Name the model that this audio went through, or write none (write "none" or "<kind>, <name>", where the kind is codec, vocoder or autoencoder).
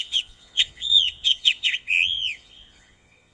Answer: vocoder, Vocos